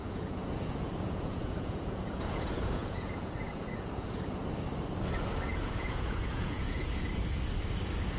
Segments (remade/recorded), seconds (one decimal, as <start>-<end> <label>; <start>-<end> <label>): 0.0-4.2 remade; 4.2-5.5 recorded; 5.5-7.0 remade; 7.0-8.2 recorded